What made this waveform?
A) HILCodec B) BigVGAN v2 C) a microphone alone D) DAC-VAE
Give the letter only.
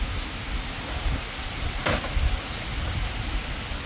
C